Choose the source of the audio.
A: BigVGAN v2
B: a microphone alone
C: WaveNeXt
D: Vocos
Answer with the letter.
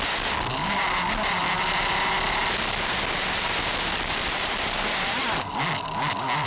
B